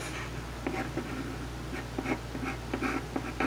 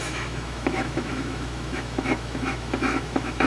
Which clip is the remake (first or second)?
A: second